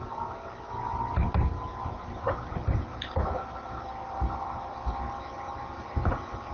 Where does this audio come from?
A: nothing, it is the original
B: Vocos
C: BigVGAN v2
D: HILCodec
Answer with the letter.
A